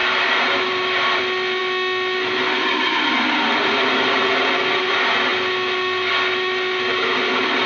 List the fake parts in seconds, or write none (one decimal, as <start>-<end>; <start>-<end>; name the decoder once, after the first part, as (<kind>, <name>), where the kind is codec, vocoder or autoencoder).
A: 0.0-1.2 (vocoder, BigVGAN v2)